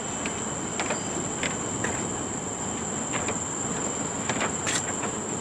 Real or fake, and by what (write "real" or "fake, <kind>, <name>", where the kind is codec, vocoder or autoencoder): real